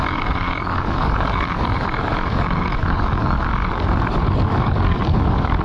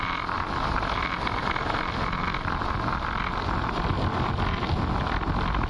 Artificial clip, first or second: first